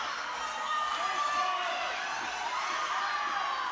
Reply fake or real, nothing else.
real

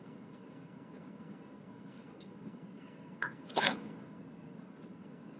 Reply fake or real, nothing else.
fake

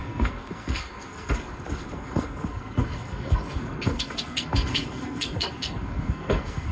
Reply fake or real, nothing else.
fake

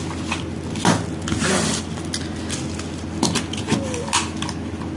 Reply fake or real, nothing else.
real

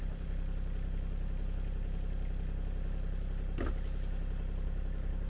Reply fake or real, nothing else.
real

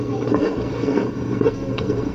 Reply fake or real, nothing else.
fake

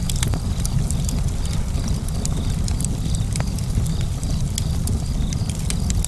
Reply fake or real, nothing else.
real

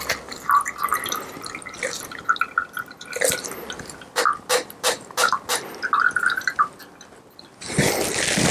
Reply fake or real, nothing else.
real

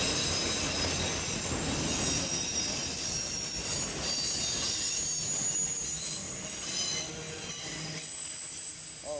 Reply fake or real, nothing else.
real